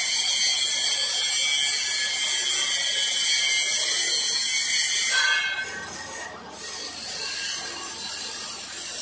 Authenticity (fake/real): real